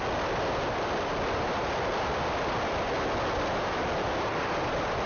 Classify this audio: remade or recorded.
recorded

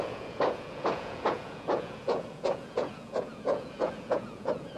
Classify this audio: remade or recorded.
remade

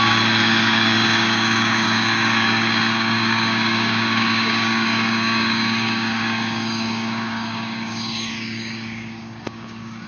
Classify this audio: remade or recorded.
remade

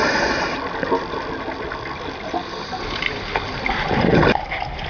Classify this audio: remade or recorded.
recorded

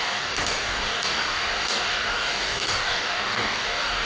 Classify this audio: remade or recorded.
remade